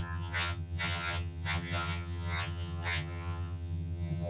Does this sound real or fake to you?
fake